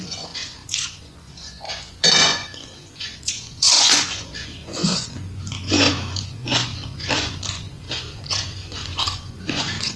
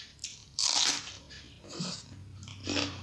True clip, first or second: second